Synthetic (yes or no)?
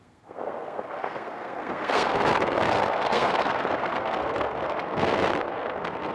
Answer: yes